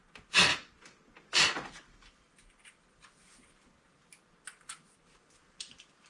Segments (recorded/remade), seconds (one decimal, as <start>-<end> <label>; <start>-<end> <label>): 0.0-6.1 recorded